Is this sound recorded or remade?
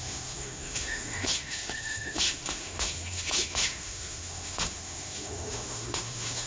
remade